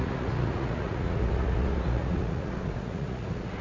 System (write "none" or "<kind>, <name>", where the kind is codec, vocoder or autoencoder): vocoder, Vocos